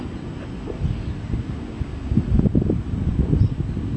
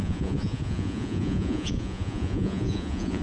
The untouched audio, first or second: first